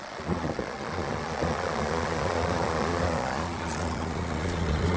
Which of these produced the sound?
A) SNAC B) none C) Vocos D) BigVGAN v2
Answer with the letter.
C